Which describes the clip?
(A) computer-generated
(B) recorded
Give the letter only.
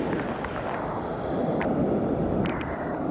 A